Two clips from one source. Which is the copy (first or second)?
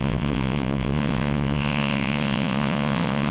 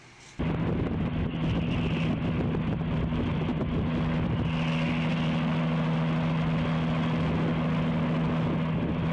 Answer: first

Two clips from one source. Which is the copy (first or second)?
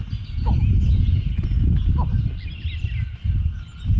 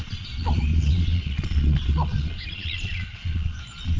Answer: second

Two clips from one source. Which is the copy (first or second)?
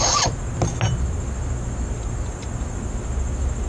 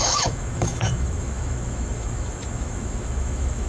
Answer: second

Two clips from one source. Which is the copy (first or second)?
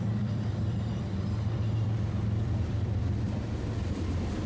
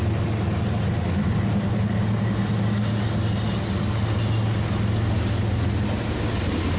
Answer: first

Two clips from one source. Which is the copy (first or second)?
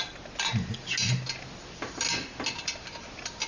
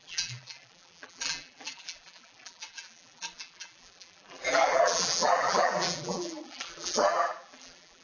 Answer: second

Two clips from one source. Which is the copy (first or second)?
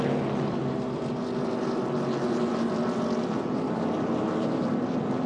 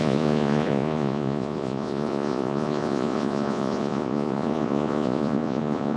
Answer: second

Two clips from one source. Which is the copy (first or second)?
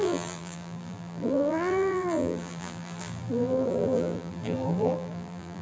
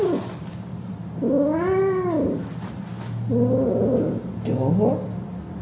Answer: first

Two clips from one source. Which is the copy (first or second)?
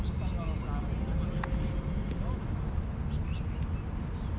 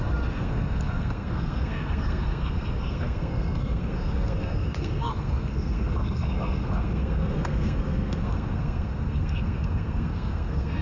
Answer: second